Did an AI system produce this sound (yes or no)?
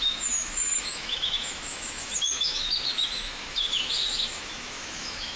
yes